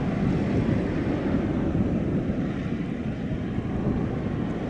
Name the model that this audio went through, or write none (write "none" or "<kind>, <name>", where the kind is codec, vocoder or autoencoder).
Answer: none